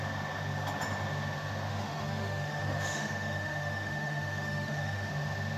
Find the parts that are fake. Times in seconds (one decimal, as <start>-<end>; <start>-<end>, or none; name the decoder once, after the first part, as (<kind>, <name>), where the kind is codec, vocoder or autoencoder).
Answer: 1.7-5.1 (autoencoder, DAC-VAE)